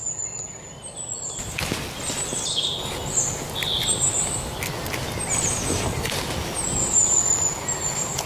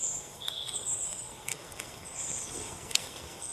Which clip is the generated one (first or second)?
second